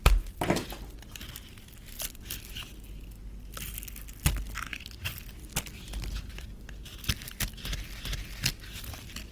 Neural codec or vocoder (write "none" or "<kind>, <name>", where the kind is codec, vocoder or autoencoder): none